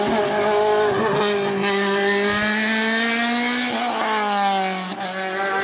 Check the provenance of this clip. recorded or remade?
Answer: recorded